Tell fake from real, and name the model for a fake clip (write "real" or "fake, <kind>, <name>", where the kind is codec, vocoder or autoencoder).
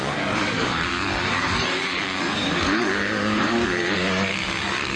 fake, codec, DAC